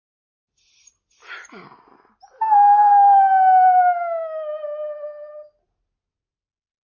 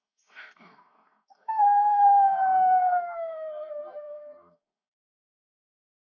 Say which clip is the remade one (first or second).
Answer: second